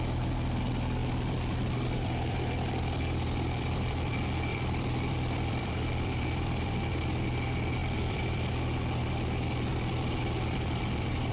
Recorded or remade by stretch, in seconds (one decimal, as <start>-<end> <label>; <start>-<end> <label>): 0.0-1.0 recorded; 1.0-4.1 remade; 4.1-4.5 recorded; 4.5-7.2 remade; 7.2-7.8 recorded; 7.8-8.5 remade; 8.5-9.7 recorded; 9.7-11.3 remade